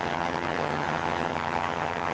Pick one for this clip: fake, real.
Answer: fake